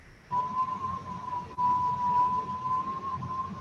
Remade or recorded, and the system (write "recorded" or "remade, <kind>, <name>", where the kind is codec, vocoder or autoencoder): recorded